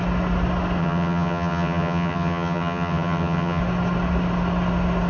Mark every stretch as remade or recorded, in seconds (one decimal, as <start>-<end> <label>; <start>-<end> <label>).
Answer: 0.0-0.8 recorded; 0.8-3.6 remade; 3.6-5.1 recorded